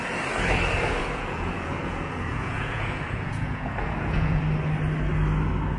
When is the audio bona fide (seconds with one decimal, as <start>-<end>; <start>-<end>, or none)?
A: 0.0-1.0; 4.4-5.8